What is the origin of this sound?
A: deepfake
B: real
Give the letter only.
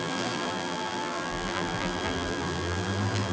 A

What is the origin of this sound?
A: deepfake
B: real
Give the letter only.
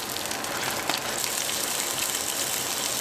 B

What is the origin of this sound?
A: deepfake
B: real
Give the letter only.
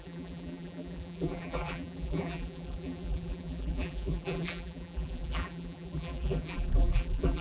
A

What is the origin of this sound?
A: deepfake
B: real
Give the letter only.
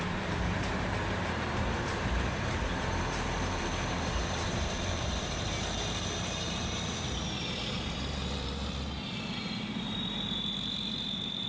A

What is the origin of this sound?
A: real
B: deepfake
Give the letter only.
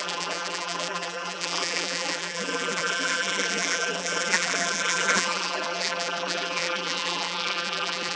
B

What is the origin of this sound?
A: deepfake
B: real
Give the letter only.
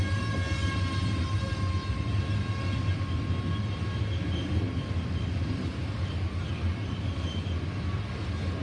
B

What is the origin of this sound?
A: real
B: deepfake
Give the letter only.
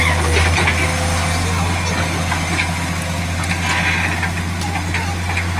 A